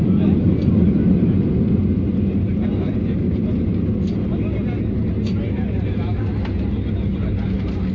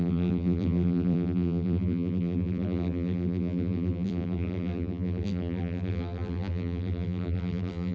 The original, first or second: first